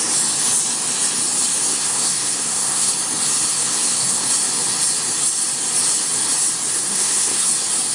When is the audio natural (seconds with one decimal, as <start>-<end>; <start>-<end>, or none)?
0.0-1.6; 2.9-3.5; 4.3-6.7; 7.5-7.9